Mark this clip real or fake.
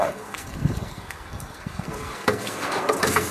fake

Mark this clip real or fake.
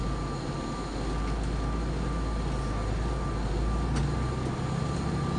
real